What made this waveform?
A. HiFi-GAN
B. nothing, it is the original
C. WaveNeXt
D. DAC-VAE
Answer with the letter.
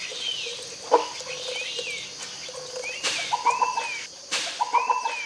B